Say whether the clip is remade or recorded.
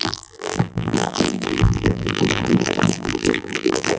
remade